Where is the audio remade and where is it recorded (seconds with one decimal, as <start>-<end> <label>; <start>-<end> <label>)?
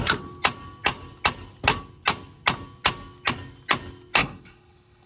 0.0-4.2 recorded; 4.2-5.1 remade